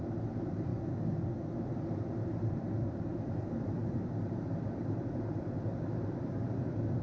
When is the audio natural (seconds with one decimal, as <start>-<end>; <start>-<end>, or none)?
0.7-1.6